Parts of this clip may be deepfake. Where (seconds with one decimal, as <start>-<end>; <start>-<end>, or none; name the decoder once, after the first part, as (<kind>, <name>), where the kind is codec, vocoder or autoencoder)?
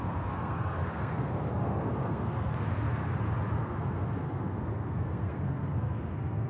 0.0-2.9 (codec, SNAC); 3.6-6.5